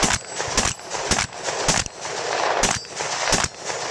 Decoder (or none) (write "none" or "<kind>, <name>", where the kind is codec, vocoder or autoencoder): none